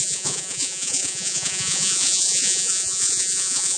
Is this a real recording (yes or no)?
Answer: no